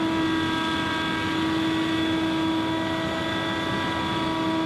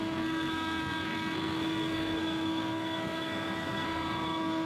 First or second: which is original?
first